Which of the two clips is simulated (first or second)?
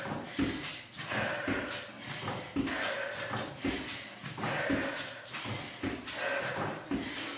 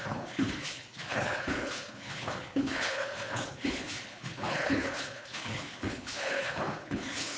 second